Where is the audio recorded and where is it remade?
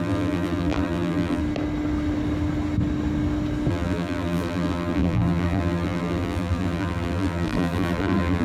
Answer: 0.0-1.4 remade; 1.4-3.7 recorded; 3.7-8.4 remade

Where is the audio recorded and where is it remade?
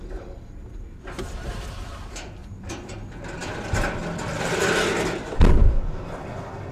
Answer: 0.0-5.6 remade; 5.6-6.7 recorded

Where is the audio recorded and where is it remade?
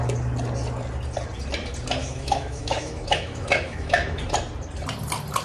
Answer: 0.0-2.0 recorded; 2.0-4.2 remade; 4.2-5.4 recorded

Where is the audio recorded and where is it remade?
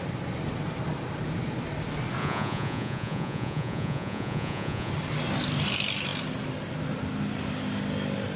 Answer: 0.0-2.2 recorded; 2.2-4.9 remade; 4.9-8.4 recorded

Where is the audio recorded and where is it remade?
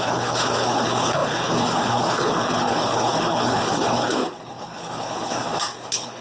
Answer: 0.0-6.2 remade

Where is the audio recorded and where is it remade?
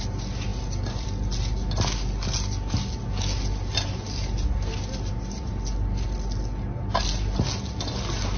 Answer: 0.0-8.4 recorded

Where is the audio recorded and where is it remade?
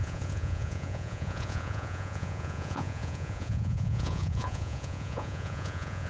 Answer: 0.0-6.1 remade